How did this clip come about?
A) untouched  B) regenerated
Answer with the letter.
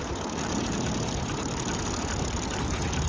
A